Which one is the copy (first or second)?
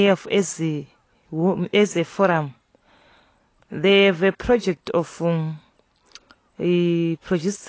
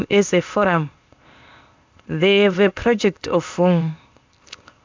second